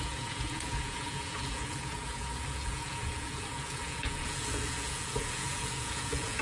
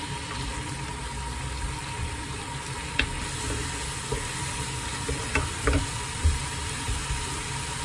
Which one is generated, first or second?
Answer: first